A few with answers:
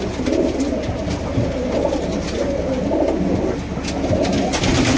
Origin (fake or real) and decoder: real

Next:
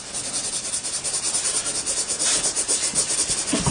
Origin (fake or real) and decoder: real